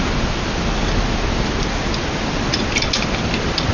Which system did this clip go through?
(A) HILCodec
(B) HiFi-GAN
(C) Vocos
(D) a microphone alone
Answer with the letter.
D